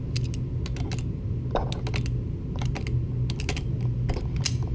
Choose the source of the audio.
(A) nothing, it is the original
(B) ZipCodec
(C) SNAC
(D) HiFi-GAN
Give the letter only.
A